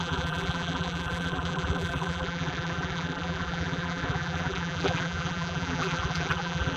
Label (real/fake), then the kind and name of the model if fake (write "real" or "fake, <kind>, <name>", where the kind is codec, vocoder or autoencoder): fake, vocoder, BigVGAN v2